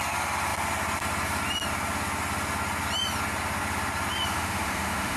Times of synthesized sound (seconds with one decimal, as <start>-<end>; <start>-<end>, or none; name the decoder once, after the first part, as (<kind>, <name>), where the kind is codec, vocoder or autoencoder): 4.3-5.2 (autoencoder, DAC-VAE)